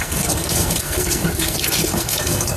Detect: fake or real fake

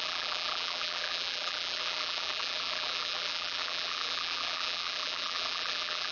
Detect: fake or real fake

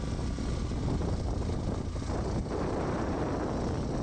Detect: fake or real real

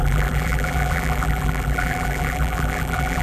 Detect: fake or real fake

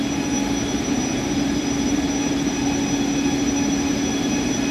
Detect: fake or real real